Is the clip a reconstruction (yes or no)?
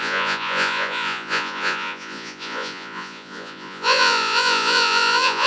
yes